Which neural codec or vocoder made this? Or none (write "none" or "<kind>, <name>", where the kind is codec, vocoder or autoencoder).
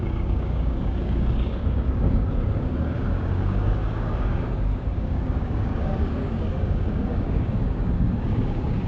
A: codec, DAC